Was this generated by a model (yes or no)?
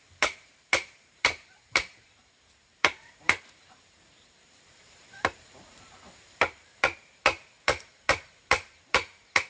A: yes